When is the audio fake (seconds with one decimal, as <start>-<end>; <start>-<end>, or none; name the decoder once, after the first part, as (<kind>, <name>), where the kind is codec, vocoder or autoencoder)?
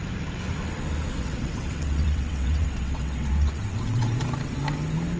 1.1-4.2 (vocoder, WaveNeXt)